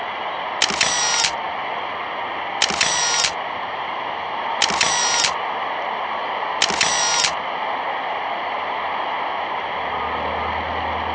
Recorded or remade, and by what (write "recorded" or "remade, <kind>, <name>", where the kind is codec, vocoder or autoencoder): recorded